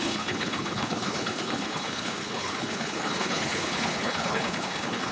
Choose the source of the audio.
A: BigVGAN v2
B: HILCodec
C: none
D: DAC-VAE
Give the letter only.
B